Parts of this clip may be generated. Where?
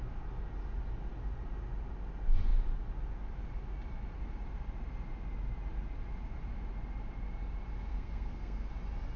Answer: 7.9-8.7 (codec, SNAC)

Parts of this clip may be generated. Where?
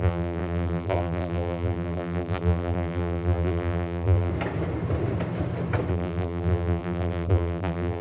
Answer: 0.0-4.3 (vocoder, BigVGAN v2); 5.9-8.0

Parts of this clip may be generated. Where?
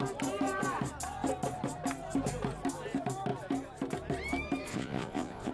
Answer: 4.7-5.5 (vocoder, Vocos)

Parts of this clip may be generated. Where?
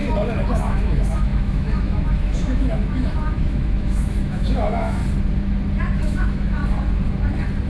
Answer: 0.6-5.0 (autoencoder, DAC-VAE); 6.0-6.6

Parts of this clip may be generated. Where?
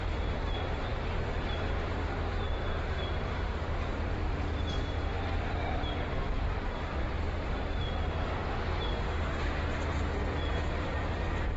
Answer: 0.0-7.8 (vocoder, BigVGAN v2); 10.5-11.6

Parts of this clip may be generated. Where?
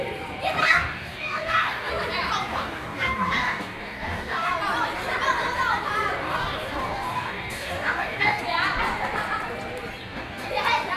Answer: 0.6-1.9 (codec, DAC); 2.5-4.5; 6.2-8.4; 10.0-10.5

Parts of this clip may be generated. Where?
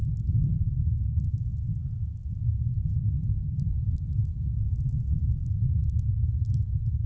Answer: 0.0-1.2 (codec, HILCodec); 2.7-4.6; 5.6-7.1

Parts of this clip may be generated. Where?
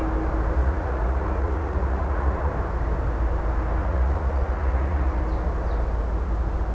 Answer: 0.6-2.5 (vocoder, Vocos); 3.8-5.2